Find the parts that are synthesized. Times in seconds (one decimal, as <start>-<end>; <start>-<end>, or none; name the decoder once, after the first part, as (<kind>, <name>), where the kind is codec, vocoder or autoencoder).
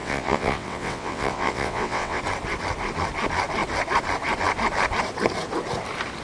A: 0.0-2.2 (vocoder, WaveNeXt)